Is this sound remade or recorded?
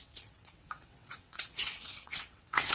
remade